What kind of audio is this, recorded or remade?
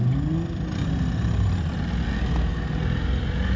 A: recorded